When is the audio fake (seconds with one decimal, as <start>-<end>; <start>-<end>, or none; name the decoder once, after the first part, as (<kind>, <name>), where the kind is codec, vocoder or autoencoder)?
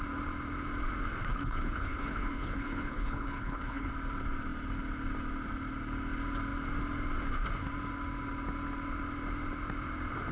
1.3-3.9 (codec, HILCodec)